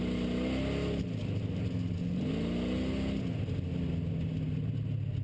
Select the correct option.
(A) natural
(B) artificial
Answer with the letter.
A